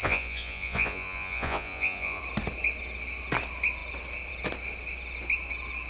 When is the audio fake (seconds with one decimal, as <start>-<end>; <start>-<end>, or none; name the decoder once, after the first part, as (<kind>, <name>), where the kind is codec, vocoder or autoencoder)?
0.0-2.2 (vocoder, Vocos)